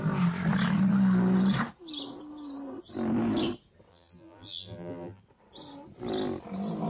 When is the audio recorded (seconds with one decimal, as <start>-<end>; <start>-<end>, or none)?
0.0-3.9; 5.2-6.9